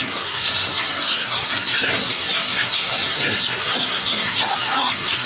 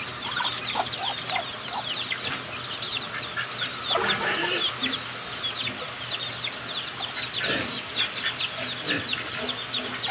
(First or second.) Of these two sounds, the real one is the second